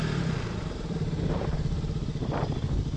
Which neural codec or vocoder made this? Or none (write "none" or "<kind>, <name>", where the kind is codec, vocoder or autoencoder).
vocoder, BigVGAN v2